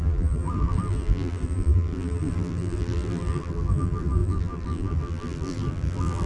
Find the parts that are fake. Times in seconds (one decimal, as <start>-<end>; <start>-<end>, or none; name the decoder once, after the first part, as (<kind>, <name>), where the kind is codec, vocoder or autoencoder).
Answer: 0.0-6.3 (vocoder, BigVGAN v2)